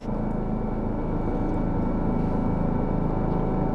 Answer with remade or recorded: recorded